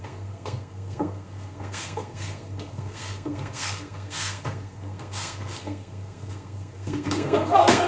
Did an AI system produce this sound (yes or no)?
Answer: yes